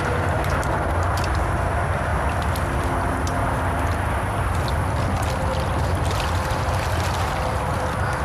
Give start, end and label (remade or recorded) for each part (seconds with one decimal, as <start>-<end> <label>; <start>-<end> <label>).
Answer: 0.0-8.2 recorded